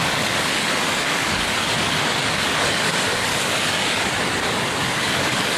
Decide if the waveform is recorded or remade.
remade